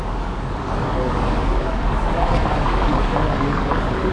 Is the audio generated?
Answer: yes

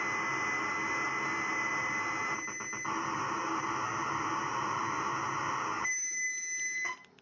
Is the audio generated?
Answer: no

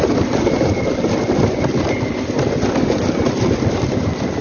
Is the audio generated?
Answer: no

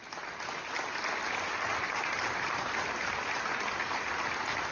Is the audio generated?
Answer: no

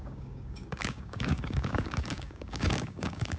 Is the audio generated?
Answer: yes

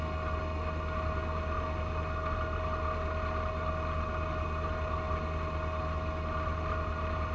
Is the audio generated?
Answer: no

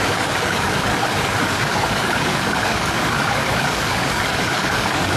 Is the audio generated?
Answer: yes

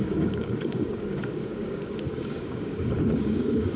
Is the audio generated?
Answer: yes